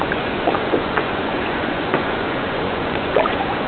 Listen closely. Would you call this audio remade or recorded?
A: remade